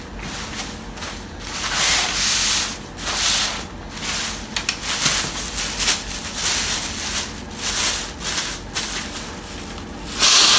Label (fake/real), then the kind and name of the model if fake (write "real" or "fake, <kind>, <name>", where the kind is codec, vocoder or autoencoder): real